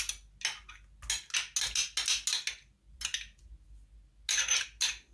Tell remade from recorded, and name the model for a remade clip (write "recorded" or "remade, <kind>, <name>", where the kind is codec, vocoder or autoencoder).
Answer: recorded